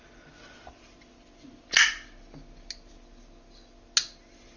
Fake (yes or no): no